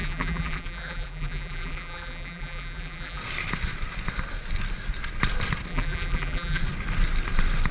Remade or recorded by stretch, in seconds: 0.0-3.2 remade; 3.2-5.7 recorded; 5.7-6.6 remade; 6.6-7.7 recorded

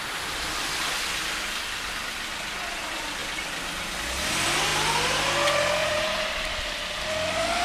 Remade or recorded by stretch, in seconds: 0.0-5.8 recorded; 5.8-6.6 remade; 6.6-7.6 recorded

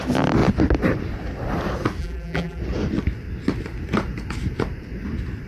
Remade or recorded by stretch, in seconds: 0.0-2.0 recorded; 2.0-2.6 remade; 2.6-5.5 recorded